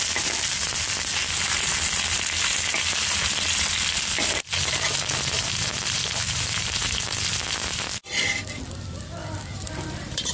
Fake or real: real